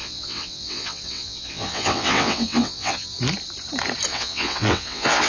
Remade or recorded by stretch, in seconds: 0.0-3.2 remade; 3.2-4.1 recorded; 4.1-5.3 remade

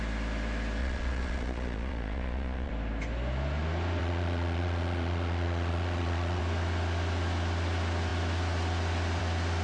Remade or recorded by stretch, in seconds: 0.0-0.8 recorded; 0.8-2.7 remade; 2.7-4.0 recorded; 4.0-6.4 remade; 6.4-9.6 recorded

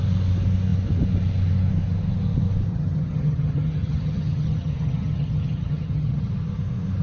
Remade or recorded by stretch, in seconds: 0.0-2.7 recorded; 2.7-6.3 remade; 6.3-7.0 recorded

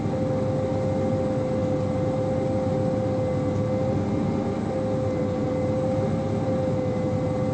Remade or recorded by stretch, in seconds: 0.0-7.5 recorded

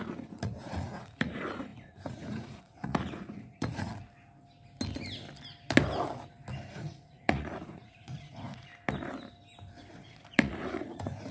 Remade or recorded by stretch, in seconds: 0.0-3.9 remade; 3.9-6.7 recorded; 6.7-8.7 remade; 8.7-9.9 recorded; 9.9-11.3 remade

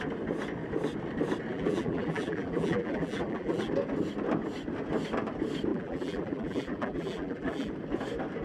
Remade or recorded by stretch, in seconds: 0.0-1.5 recorded; 1.5-3.7 remade; 3.7-5.7 recorded; 5.7-7.7 remade; 7.7-8.4 recorded

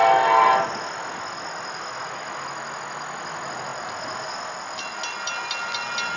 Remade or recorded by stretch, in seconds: 0.0-6.2 recorded